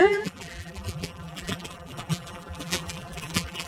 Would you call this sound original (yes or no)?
no